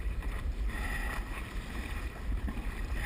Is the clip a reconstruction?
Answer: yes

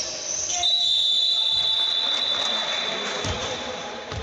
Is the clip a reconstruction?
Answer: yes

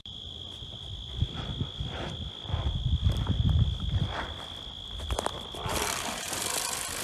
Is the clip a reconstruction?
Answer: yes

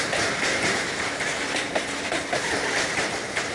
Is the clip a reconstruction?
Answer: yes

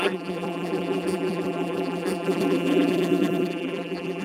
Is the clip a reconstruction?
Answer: yes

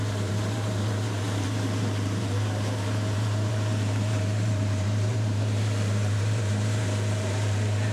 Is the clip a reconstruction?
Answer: yes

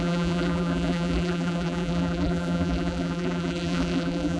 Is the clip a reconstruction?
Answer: yes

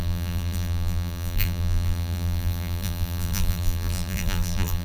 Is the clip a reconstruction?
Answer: yes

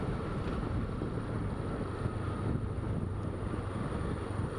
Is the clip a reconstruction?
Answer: yes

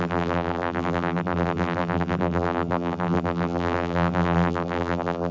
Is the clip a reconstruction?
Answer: yes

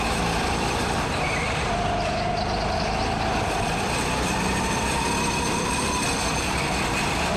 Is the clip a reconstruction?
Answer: yes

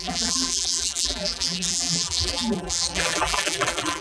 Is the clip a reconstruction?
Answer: yes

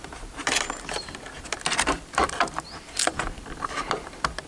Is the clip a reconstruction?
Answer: yes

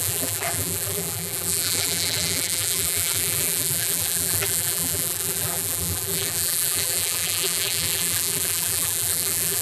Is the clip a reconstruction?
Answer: yes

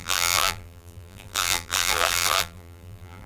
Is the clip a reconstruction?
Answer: yes